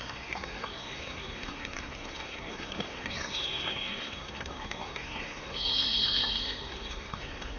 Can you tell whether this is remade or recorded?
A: remade